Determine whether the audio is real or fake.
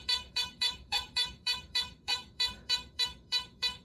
fake